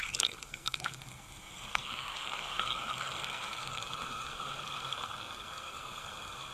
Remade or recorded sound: remade